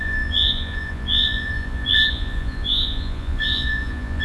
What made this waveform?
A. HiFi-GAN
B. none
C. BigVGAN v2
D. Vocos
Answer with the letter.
D